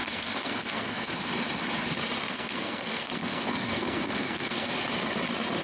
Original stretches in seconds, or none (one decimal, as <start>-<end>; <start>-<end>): 1.1-2.3; 4.7-5.6